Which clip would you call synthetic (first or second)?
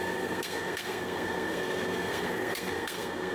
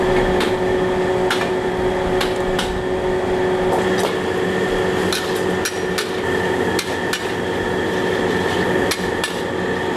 first